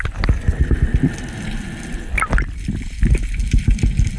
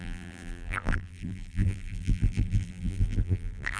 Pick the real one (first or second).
first